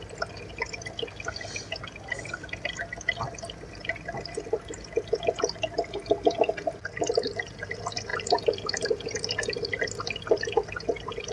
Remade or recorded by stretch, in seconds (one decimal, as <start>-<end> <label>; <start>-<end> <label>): 0.0-8.1 recorded; 8.1-8.8 remade; 8.8-11.3 recorded